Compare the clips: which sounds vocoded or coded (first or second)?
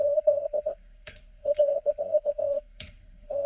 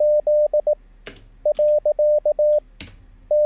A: first